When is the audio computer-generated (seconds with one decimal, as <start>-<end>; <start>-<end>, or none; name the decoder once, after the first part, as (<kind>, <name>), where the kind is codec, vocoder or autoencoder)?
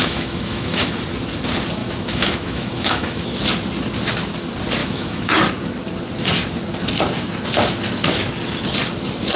0.0-0.9 (autoencoder, DAC-VAE); 1.8-3.2; 4.8-5.3